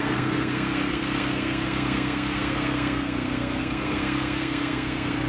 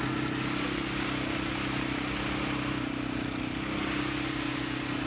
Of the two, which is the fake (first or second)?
first